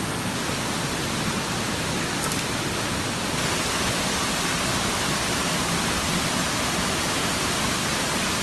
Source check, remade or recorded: recorded